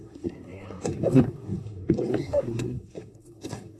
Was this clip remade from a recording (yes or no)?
yes